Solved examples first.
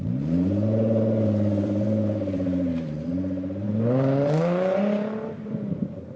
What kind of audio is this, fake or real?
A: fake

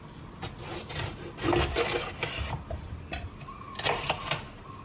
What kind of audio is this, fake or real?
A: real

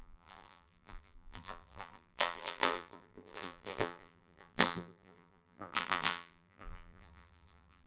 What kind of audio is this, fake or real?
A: fake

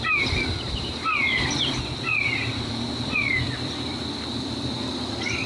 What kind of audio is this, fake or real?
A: fake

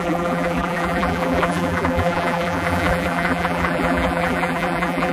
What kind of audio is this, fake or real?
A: fake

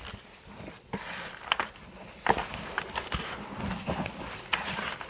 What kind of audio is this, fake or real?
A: real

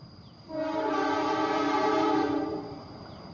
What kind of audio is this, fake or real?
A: fake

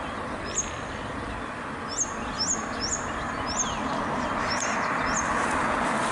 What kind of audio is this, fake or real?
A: real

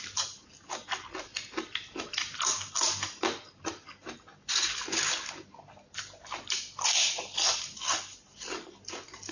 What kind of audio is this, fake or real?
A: real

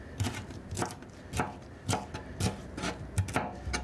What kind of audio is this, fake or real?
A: real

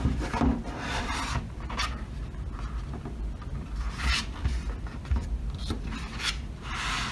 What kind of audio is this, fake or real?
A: fake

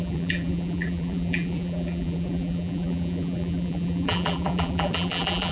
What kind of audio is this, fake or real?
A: fake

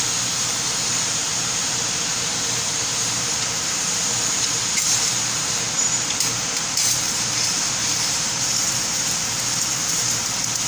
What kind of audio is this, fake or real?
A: fake